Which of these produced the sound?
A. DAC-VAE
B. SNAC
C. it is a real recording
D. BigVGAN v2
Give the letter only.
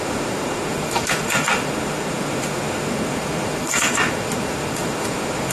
A